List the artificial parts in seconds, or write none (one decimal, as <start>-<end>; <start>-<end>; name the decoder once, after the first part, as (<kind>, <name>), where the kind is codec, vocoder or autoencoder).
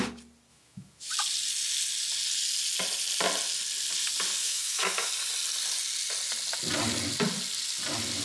0.5-1.1 (autoencoder, DAC-VAE); 4.4-5.1